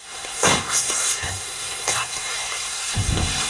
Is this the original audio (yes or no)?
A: no